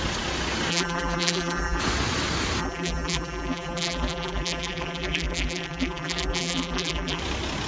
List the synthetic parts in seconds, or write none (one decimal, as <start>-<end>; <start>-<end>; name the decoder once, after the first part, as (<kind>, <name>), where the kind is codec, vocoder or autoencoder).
0.7-1.8 (vocoder, BigVGAN v2); 2.6-7.2